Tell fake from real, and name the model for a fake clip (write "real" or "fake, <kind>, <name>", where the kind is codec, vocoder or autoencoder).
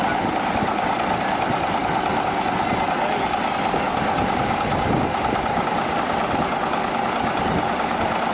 real